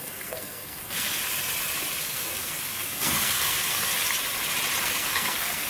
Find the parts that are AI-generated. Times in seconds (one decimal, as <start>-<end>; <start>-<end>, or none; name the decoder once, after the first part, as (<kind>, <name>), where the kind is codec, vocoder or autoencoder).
0.0-1.2 (codec, SNAC); 2.0-3.9; 4.8-5.7